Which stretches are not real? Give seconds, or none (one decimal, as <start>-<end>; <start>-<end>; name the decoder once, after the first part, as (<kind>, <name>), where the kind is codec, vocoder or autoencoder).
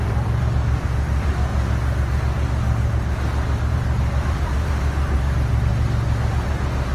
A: 0.0-1.5 (vocoder, BigVGAN v2); 3.7-5.7